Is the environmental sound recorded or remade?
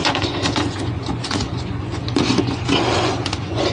remade